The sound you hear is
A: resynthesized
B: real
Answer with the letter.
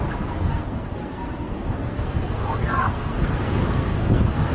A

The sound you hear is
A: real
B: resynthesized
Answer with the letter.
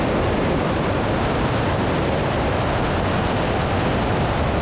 A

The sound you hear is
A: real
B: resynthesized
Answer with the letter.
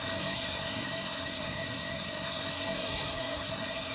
B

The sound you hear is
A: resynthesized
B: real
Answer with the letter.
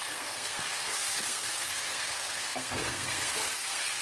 A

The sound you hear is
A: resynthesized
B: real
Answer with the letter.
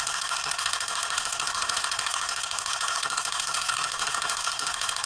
A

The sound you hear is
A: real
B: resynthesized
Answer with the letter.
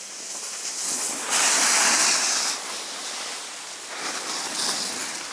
A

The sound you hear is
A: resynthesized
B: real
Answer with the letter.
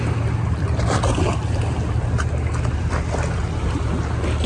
B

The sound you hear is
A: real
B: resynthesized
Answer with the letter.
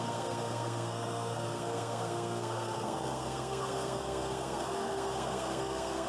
B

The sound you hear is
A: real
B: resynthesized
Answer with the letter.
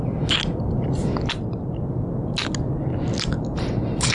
A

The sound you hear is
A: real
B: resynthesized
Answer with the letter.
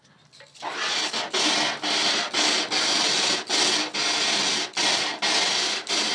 A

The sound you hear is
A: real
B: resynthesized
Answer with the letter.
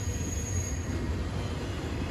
A